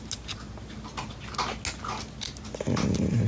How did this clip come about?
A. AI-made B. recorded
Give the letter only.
B